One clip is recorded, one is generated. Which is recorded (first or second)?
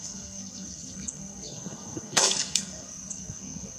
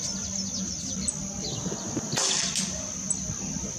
second